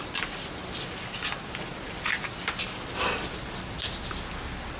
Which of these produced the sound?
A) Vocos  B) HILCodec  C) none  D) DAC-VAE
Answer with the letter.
C